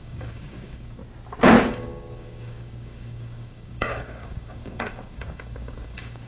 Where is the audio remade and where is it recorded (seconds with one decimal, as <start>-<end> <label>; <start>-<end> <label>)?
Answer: 0.0-1.0 remade; 1.0-1.7 recorded; 1.7-6.3 remade